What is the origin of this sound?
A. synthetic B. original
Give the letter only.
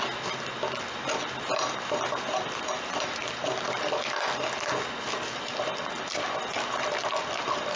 B